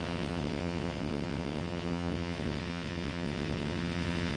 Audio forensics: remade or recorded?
remade